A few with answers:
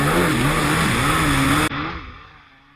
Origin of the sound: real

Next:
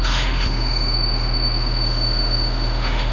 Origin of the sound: fake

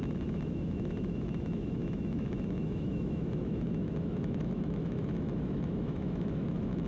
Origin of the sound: fake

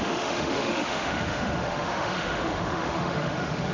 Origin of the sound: fake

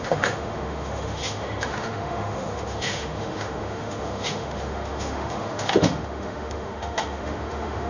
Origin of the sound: fake